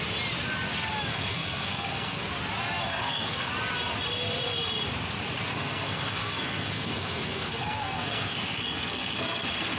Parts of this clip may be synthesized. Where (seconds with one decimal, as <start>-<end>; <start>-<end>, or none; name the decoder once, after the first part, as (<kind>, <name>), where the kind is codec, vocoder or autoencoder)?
1.1-2.3 (codec, SNAC); 2.9-3.5; 5.5-9.8